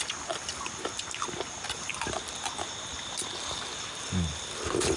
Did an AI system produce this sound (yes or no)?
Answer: no